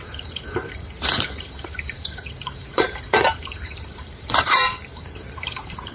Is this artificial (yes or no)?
yes